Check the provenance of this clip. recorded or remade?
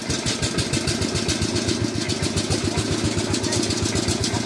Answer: recorded